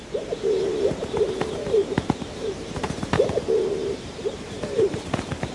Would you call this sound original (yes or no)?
no